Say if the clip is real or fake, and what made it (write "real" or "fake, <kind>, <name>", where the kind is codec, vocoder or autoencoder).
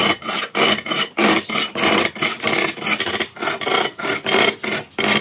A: real